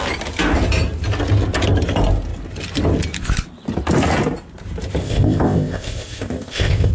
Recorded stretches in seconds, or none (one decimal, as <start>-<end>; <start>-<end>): 0.0-5.0